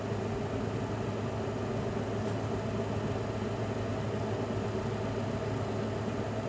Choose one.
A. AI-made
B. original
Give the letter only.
B